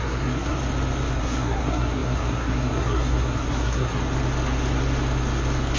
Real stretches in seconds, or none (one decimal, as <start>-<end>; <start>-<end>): 0.6-1.2; 4.0-5.8